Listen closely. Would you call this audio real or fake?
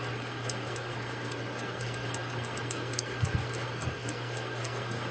fake